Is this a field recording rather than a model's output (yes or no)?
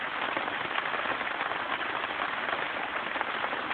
yes